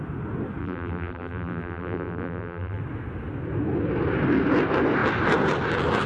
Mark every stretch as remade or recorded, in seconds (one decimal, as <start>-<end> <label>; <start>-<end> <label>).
0.0-0.6 recorded; 0.6-2.8 remade; 2.8-6.1 recorded